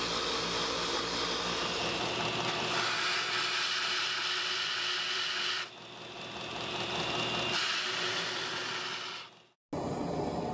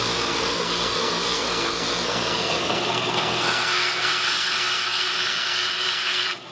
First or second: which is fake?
second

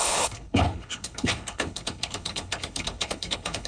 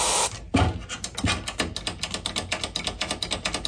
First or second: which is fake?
first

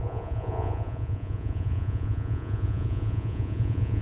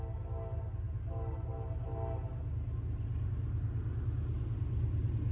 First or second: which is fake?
first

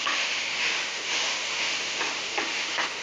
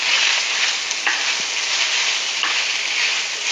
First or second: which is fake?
first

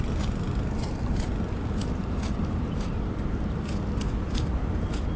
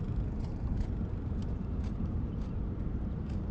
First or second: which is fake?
second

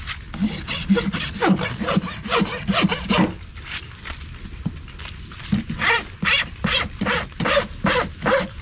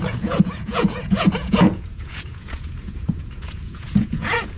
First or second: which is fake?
second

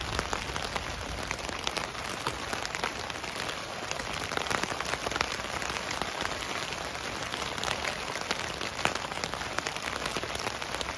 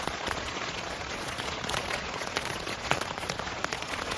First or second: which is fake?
second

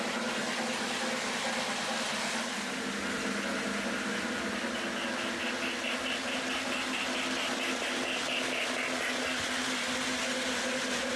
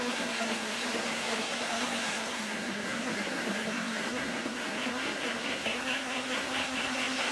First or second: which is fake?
second